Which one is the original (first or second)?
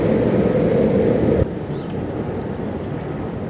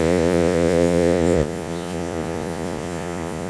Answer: first